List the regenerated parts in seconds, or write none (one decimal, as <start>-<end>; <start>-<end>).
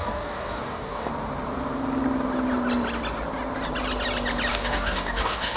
0.0-1.1; 4.5-5.6